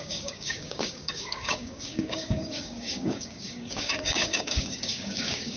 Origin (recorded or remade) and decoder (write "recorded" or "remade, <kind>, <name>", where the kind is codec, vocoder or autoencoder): remade, codec, DAC